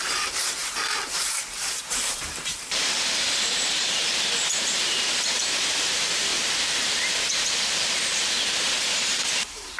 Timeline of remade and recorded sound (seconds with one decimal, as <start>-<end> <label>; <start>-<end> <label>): 0.0-6.3 remade; 6.3-8.8 recorded; 8.8-9.8 remade